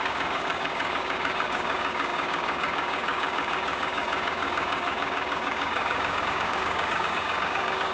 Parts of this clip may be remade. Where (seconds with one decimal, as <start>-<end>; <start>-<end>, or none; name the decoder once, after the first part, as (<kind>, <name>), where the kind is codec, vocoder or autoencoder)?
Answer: 0.0-7.9 (codec, DAC)